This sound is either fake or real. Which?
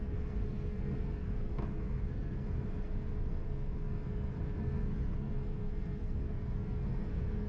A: fake